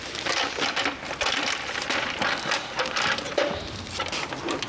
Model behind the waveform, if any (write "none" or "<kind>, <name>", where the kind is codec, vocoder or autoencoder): none